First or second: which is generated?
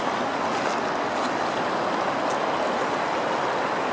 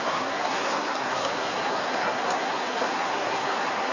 second